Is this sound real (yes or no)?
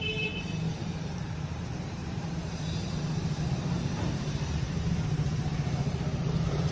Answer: no